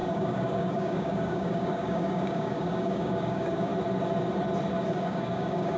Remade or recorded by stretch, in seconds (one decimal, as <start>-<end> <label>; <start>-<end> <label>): 0.0-3.7 remade; 3.7-4.9 recorded; 4.9-5.8 remade